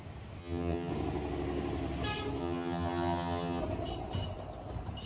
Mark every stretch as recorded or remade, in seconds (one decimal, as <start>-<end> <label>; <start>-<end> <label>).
0.0-0.4 recorded; 0.4-0.9 remade; 0.9-2.4 recorded; 2.4-3.6 remade; 3.6-5.1 recorded